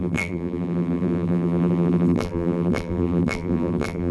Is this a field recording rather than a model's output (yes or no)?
no